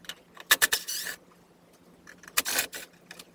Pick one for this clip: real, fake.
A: real